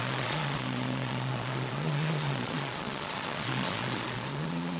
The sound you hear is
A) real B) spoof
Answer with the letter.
B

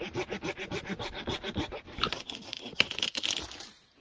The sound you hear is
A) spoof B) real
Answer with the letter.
B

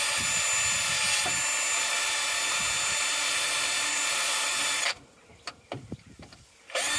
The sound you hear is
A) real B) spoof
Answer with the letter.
A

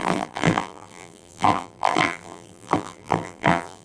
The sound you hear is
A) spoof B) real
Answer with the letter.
A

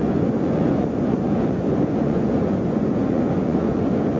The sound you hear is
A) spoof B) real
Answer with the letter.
A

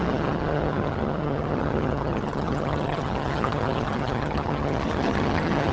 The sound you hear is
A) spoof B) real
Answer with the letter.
A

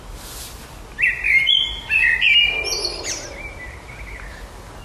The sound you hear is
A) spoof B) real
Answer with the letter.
B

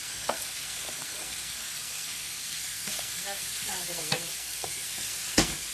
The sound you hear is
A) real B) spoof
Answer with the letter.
B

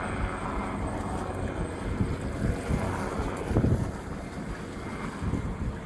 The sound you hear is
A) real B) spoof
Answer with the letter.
A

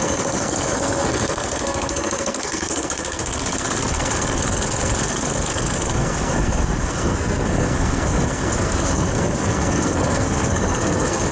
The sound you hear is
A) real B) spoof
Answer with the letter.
B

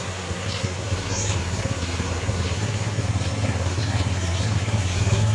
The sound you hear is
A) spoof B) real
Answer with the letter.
A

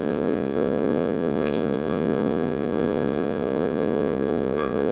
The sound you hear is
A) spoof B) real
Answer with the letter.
A